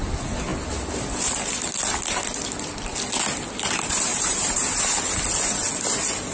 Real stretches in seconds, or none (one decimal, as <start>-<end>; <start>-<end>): 0.0-4.1; 5.1-6.3